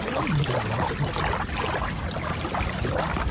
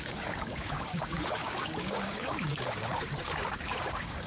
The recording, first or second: first